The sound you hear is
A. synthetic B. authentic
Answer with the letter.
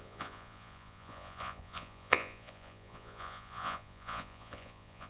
A